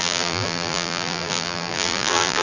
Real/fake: fake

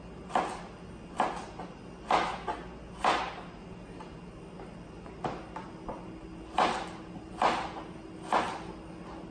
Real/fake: real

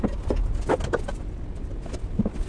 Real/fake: real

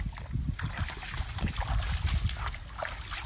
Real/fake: real